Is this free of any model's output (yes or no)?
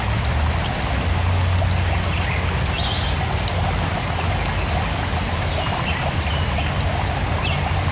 yes